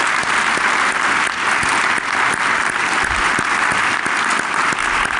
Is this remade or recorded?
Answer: recorded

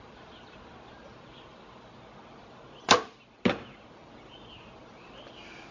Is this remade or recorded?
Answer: recorded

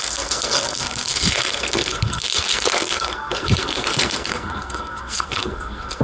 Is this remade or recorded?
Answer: remade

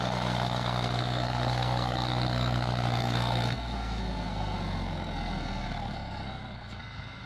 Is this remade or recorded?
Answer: remade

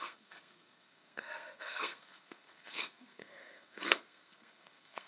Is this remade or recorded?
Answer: remade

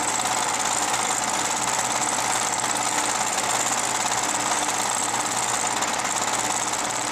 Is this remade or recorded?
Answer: recorded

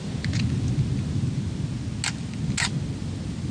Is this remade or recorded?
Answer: recorded